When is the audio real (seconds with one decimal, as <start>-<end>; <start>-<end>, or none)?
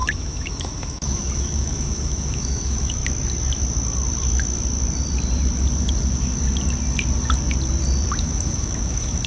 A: 3.0-8.2